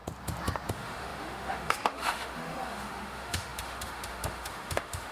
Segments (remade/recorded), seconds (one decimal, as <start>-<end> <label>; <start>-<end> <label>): 0.0-0.7 recorded; 0.7-5.1 remade